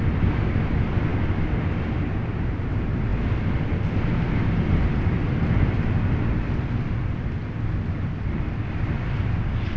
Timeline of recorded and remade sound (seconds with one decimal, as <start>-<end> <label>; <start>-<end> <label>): 0.0-9.8 recorded